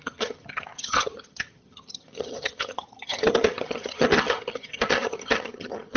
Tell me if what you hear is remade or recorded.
remade